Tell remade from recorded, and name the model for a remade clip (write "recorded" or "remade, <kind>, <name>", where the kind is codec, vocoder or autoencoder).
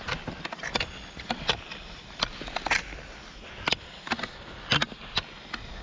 recorded